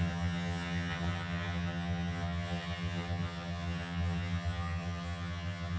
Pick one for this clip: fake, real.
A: fake